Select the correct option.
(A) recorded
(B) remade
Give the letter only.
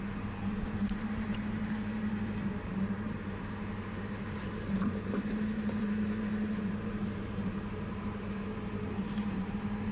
B